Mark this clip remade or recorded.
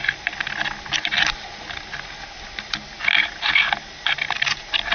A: recorded